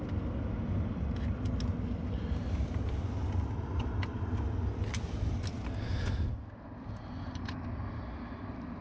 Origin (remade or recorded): recorded